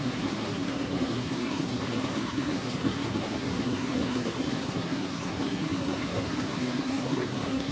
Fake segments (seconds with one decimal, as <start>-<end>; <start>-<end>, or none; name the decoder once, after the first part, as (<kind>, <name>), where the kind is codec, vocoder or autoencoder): 0.0-7.7 (codec, SNAC)

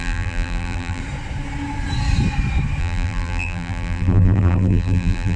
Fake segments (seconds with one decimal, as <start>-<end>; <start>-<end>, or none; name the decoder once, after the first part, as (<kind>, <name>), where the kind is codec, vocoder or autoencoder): 0.0-1.0 (vocoder, BigVGAN v2); 2.8-5.4